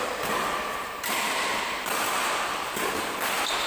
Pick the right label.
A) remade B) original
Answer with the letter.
B